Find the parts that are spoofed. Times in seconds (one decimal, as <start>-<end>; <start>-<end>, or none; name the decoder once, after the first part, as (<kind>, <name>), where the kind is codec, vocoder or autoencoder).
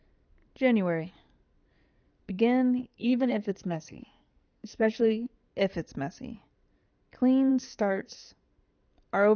2.8-5.3 (codec, SNAC); 7.5-8.3